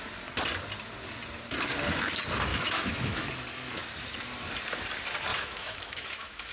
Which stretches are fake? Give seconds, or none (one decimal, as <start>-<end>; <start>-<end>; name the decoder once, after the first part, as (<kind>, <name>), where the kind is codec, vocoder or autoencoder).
2.5-3.3 (autoencoder, DAC-VAE); 5.3-6.5